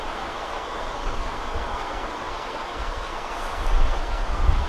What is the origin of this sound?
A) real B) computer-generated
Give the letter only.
B